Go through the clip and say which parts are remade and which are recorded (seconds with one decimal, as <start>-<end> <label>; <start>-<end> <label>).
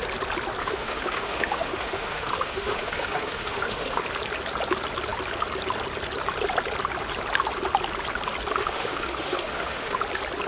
0.0-0.6 recorded; 0.6-4.0 remade; 4.0-8.6 recorded; 8.6-10.0 remade; 10.0-10.5 recorded